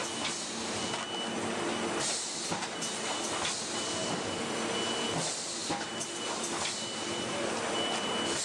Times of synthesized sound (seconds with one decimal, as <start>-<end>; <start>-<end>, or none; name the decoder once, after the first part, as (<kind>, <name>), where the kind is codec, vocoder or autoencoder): none